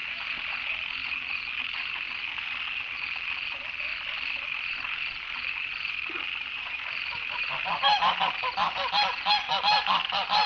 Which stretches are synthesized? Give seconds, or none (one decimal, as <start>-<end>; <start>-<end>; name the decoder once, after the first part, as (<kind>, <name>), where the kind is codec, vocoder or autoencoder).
3.9-8.1 (vocoder, BigVGAN v2)